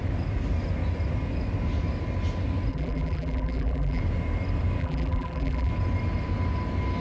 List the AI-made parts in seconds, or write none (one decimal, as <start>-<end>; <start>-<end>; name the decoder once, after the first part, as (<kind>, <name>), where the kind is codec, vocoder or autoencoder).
2.7-4.0 (vocoder, BigVGAN v2); 4.8-5.7